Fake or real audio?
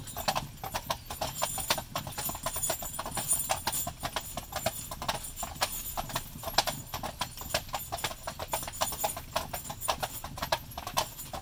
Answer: real